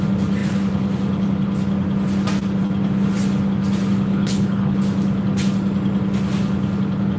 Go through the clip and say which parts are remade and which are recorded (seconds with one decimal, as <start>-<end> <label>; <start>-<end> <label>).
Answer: 0.0-4.1 recorded; 4.1-4.7 remade; 4.7-7.2 recorded